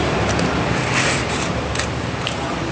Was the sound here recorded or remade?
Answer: recorded